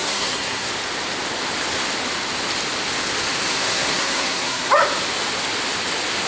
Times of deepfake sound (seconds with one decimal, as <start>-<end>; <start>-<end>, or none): 0.0-0.7; 3.5-4.7